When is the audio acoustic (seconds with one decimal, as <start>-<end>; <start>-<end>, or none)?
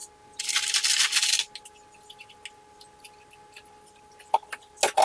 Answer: 0.0-5.0